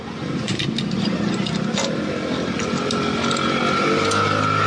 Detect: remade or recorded recorded